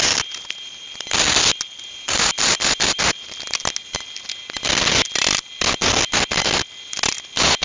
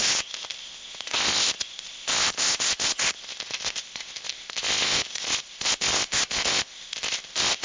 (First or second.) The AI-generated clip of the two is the second